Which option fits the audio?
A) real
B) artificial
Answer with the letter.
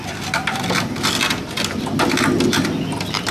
A